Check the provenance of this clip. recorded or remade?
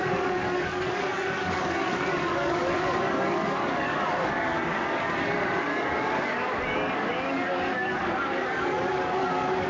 remade